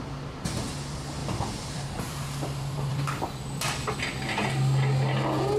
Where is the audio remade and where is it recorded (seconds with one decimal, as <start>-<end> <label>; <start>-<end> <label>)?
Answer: 0.0-1.2 recorded; 1.2-4.0 remade; 4.0-5.6 recorded